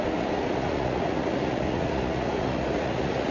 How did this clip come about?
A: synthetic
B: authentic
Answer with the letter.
A